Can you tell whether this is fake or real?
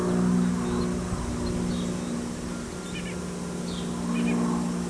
real